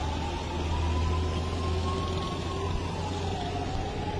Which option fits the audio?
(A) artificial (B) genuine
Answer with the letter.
B